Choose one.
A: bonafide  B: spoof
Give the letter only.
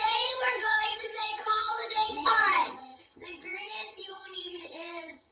B